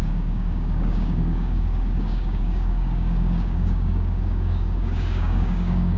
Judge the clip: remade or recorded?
remade